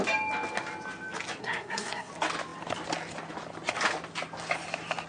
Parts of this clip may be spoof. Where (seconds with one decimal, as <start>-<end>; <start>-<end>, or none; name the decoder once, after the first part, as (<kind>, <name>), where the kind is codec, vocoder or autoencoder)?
1.4-2.1 (codec, SNAC)